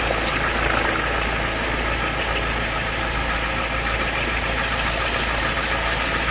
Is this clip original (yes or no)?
yes